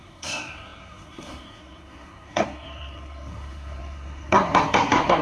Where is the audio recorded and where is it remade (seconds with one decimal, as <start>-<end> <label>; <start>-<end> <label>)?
0.0-5.2 remade